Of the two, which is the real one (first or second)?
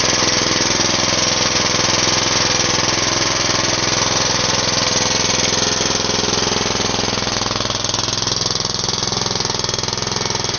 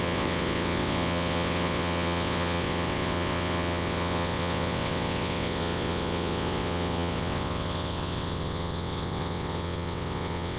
first